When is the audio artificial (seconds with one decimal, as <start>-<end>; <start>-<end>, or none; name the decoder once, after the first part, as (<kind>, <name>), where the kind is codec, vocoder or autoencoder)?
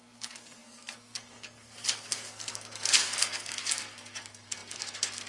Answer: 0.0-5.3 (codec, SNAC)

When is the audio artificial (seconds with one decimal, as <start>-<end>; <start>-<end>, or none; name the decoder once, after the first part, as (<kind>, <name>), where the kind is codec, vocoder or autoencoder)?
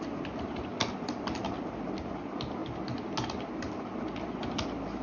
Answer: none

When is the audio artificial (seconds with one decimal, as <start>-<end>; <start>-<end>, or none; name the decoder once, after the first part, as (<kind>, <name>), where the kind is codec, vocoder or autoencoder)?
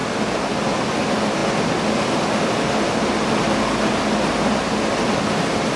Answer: none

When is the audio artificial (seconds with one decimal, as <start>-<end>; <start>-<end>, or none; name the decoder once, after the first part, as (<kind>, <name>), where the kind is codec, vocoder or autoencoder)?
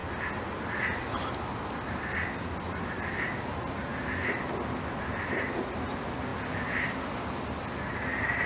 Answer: none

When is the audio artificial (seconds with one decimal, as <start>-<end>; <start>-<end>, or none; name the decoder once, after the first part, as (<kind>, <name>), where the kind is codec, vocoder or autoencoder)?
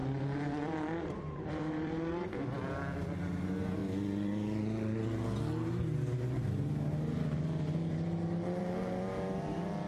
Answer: 0.0-2.7 (vocoder, BigVGAN v2)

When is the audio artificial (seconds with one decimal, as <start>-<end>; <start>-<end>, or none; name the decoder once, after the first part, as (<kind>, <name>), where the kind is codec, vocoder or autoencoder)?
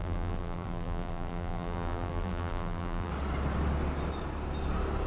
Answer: 0.0-3.1 (vocoder, BigVGAN v2)